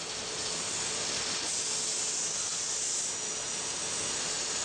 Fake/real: real